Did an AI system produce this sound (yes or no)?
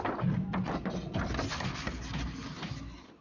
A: no